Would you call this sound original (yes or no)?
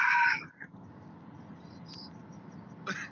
yes